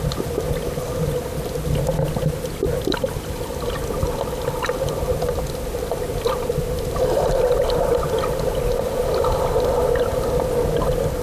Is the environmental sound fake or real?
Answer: real